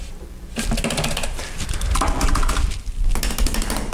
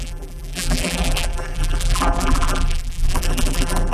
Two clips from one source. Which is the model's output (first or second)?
second